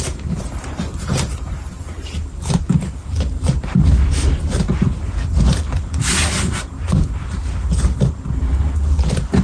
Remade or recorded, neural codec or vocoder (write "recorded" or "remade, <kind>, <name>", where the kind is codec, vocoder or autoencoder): recorded